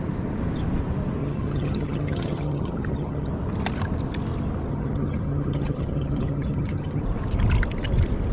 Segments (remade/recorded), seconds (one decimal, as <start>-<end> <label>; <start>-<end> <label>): 0.0-1.2 recorded; 1.2-3.3 remade; 3.3-4.7 recorded; 4.7-7.0 remade; 7.0-8.3 recorded